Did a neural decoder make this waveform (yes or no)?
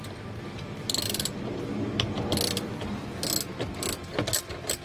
no